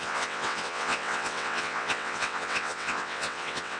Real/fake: fake